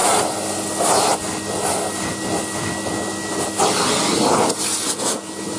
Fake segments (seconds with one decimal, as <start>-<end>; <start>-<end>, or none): none